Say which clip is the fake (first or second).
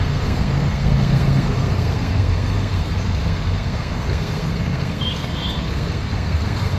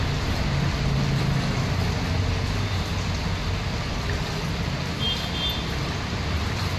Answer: first